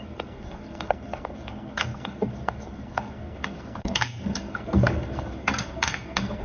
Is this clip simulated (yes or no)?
yes